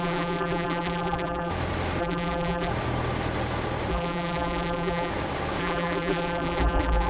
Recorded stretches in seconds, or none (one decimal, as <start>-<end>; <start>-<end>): 1.5-2.0; 2.7-3.9; 5.1-5.6